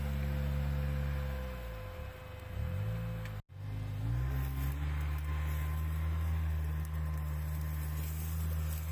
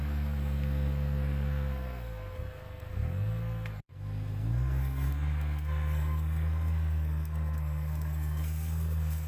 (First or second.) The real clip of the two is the first